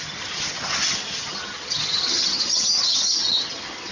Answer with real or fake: fake